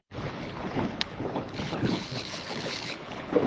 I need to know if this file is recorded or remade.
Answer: remade